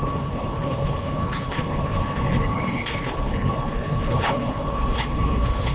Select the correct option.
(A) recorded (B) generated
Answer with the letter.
B